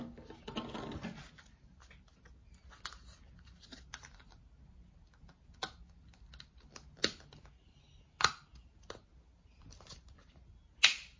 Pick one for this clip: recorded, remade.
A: recorded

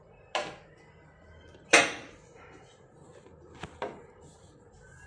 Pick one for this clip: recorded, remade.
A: recorded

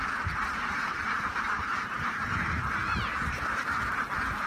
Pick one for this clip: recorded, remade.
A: recorded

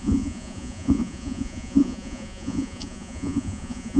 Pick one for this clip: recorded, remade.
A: remade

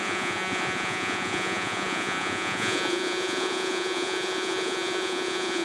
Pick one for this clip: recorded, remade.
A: remade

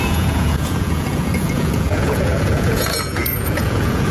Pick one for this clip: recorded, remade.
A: remade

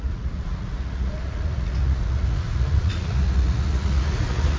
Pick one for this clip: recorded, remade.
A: remade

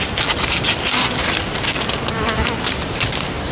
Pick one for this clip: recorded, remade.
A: recorded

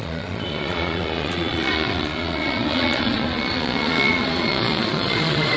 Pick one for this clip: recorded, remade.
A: remade